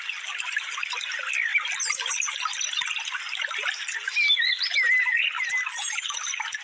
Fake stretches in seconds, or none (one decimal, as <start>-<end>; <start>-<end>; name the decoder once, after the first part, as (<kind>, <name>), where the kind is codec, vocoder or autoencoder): none